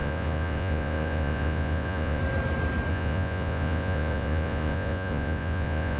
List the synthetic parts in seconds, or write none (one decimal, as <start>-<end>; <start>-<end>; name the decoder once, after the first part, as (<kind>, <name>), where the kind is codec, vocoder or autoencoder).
0.0-2.2 (vocoder, Vocos); 2.9-6.0